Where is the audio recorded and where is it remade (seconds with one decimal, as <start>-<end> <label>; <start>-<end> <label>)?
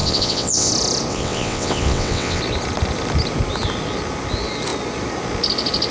0.0-0.7 remade; 0.7-1.1 recorded; 1.1-2.4 remade; 2.4-5.9 recorded